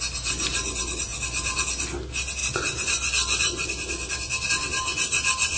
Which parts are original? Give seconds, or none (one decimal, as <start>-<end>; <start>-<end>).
0.0-5.6